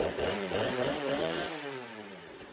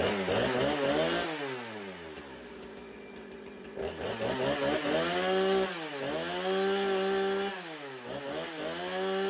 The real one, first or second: second